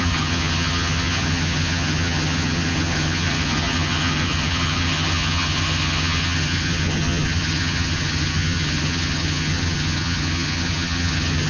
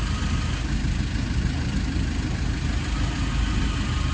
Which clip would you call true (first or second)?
second